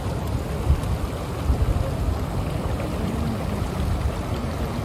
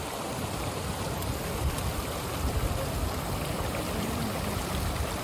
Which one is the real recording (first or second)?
first